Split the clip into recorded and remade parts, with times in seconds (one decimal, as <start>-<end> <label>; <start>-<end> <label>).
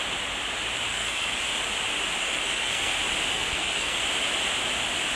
0.0-0.9 recorded; 0.9-1.4 remade; 1.4-2.2 recorded; 2.2-2.9 remade; 2.9-3.3 recorded; 3.3-4.0 remade; 4.0-5.2 recorded